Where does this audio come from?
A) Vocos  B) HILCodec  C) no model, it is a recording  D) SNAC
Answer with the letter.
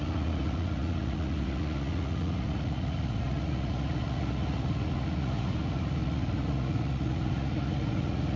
A